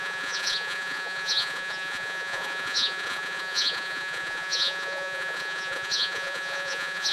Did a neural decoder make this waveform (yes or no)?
yes